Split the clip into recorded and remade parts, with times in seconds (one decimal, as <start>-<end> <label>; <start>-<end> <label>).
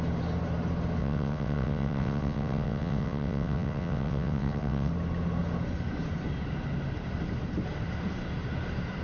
0.0-1.0 recorded; 1.0-4.9 remade; 4.9-9.0 recorded